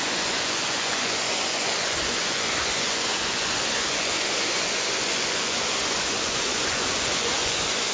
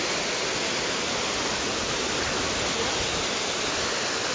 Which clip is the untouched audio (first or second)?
second